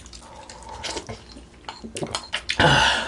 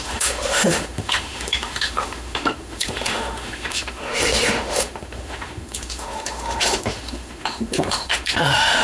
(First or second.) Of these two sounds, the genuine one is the first